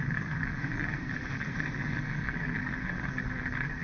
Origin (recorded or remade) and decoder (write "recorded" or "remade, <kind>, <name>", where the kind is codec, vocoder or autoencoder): remade, codec, SNAC